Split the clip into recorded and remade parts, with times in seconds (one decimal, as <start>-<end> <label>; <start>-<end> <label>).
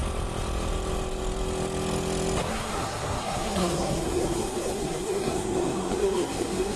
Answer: 0.0-2.5 recorded; 2.5-6.8 remade